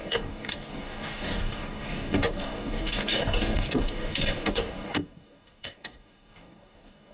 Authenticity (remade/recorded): remade